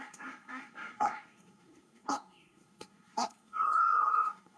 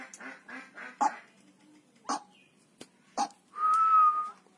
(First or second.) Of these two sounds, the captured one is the second